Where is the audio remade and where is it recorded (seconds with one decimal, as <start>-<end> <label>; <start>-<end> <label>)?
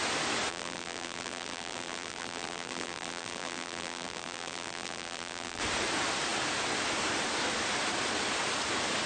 0.0-0.5 recorded; 0.5-5.6 remade; 5.6-9.1 recorded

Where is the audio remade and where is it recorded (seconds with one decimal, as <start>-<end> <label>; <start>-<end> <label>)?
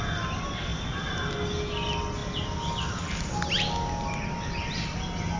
0.0-5.4 recorded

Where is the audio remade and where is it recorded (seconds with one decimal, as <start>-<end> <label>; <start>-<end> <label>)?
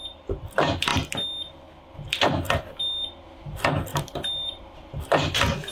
0.0-3.9 recorded; 3.9-4.9 remade; 4.9-5.7 recorded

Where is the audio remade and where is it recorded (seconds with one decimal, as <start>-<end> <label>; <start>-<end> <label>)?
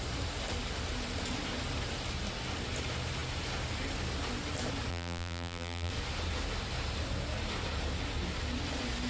0.0-4.9 recorded; 4.9-5.9 remade; 5.9-9.1 recorded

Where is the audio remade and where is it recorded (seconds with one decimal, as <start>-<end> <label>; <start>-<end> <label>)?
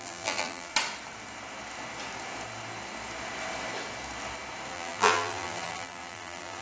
0.0-0.7 remade; 0.7-4.7 recorded; 4.7-6.6 remade